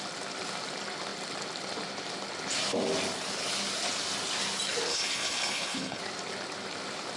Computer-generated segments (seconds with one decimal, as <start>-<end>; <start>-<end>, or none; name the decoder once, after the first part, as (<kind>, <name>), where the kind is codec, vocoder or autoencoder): 4.9-6.0 (codec, HILCodec)